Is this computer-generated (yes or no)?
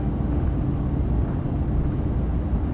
no